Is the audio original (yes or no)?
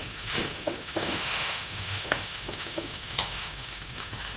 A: no